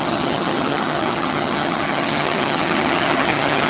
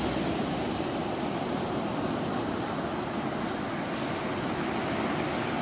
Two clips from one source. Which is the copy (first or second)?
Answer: first